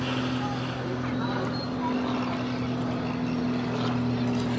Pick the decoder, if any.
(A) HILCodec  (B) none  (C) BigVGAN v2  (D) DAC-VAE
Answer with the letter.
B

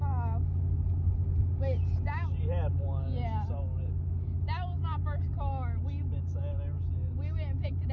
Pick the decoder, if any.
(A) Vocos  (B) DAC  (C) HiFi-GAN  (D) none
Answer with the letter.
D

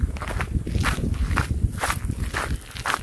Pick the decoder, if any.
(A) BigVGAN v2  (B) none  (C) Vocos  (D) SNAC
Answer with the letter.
B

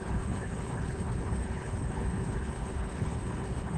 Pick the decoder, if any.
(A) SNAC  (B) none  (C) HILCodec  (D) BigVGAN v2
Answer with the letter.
C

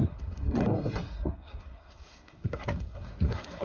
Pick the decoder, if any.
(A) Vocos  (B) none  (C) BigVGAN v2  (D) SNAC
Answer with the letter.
D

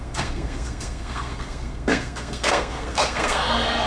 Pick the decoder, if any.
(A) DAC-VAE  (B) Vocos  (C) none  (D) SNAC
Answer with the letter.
D